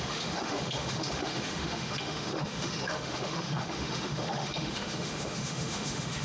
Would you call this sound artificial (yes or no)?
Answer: yes